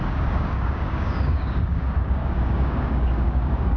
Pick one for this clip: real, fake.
fake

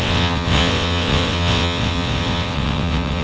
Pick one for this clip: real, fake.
fake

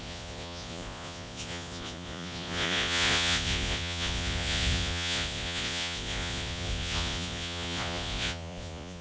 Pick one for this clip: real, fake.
fake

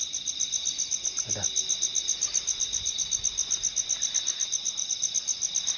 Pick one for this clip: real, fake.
real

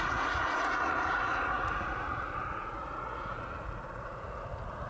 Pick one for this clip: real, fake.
fake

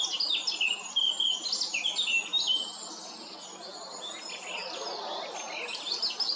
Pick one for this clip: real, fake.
real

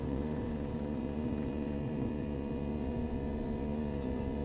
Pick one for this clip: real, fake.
fake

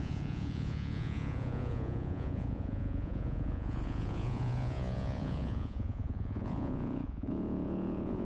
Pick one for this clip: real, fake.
fake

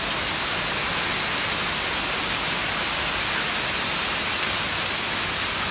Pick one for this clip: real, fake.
real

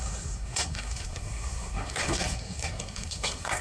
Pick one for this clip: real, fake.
fake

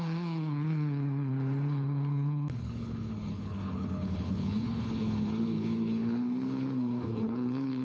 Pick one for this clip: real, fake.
fake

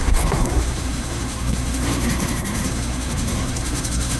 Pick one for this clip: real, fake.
fake